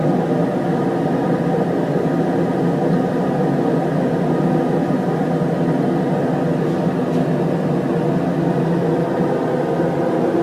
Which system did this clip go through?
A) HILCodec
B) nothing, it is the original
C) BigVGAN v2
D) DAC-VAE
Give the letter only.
B